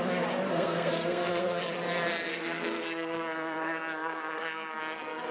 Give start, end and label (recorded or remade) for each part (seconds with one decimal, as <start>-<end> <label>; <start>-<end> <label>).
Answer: 0.0-0.5 recorded; 0.5-1.6 remade; 1.6-2.3 recorded; 2.3-4.8 remade; 4.8-5.3 recorded